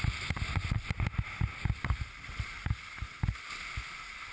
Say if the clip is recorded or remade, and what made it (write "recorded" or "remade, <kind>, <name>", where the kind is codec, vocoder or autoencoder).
recorded